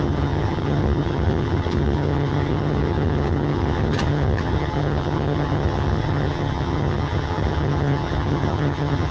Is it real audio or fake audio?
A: fake